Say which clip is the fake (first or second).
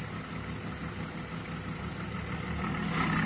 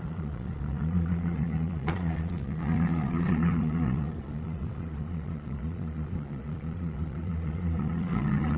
second